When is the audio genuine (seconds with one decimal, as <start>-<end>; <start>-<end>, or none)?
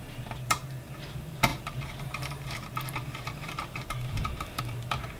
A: none